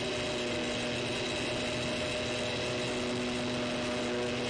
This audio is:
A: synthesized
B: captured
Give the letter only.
B